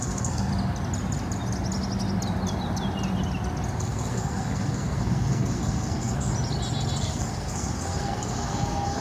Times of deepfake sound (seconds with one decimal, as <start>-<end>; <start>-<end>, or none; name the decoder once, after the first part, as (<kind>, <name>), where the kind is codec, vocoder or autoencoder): 0.0-0.5 (codec, SNAC); 3.8-6.3; 7.0-9.0